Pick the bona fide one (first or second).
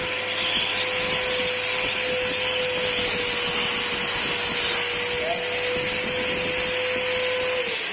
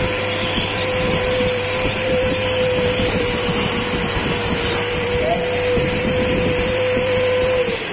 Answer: first